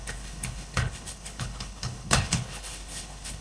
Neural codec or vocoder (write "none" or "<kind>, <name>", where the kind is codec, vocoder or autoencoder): codec, HILCodec